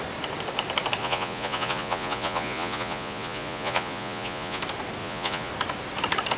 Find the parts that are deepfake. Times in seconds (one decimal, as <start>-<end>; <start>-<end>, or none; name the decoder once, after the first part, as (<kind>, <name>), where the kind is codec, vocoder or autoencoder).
1.0-4.6 (vocoder, Vocos); 5.0-5.5